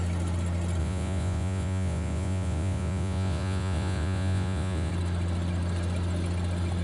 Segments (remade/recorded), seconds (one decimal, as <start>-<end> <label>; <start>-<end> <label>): 0.0-0.8 recorded; 0.8-4.9 remade; 4.9-6.8 recorded